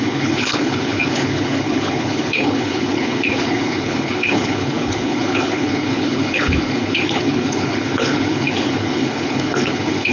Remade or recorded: remade